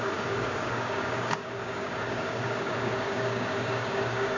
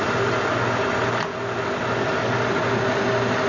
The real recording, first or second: second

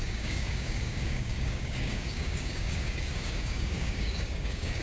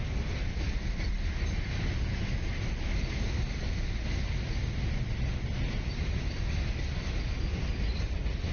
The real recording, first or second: second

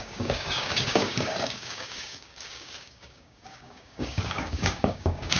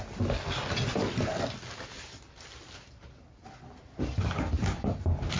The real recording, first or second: second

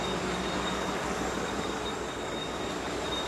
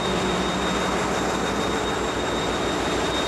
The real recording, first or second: second